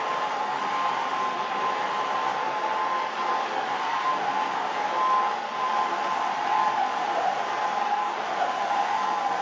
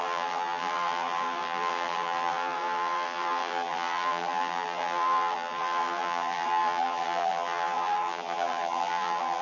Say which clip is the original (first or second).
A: first